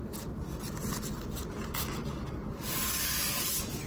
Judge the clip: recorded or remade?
recorded